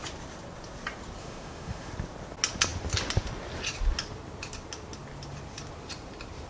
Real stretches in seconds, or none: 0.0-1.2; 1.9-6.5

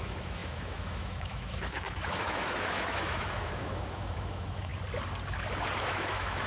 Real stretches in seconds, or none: 4.7-5.8

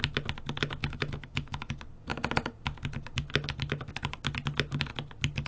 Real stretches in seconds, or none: 0.0-0.8; 1.7-5.5

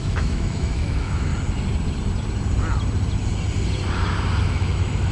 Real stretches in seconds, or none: 1.3-4.4

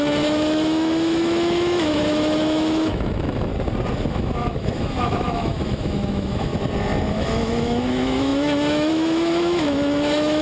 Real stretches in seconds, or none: 3.5-4.1; 6.5-7.1

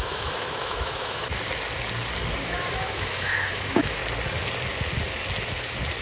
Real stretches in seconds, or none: 1.3-2.4; 4.0-6.0